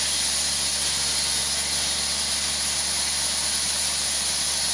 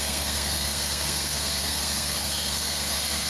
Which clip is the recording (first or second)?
first